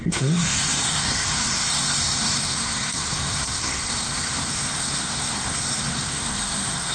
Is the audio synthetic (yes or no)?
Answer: yes